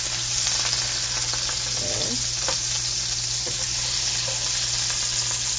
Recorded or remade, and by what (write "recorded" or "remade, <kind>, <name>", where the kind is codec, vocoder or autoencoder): recorded